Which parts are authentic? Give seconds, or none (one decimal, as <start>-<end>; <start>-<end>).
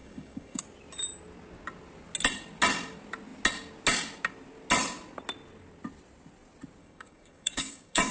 0.6-6.8